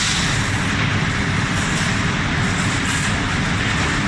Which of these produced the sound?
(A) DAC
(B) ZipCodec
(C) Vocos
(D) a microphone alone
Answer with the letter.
D